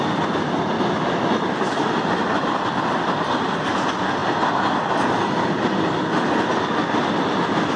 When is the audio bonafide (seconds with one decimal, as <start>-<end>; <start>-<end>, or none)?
0.0-7.8